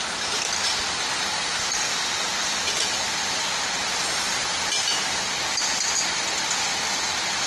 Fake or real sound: real